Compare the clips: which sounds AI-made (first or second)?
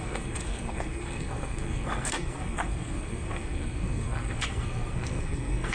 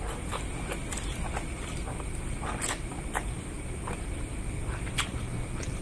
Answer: first